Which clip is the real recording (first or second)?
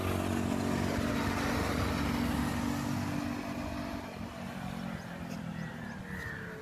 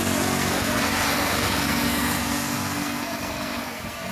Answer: first